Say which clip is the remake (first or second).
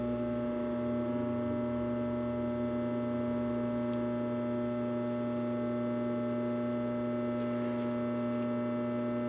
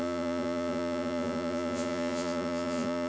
second